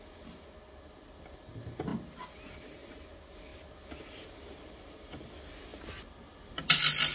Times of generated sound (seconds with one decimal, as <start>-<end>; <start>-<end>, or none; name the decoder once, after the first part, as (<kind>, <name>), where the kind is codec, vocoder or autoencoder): none